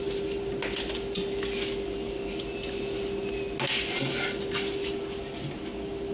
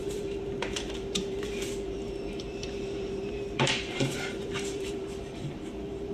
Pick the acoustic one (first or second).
first